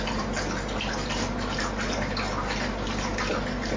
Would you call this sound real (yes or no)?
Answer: yes